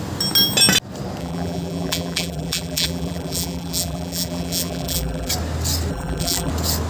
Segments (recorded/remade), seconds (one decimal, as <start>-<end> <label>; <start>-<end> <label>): 0.0-1.2 recorded; 1.2-5.3 remade; 5.3-5.9 recorded; 5.9-6.5 remade; 6.5-6.9 recorded